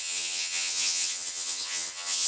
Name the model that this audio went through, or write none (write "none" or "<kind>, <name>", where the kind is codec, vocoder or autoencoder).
vocoder, HiFi-GAN